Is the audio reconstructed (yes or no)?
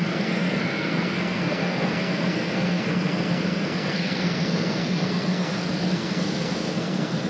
yes